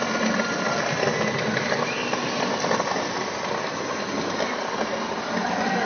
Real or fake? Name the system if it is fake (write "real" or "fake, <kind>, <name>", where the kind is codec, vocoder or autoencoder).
real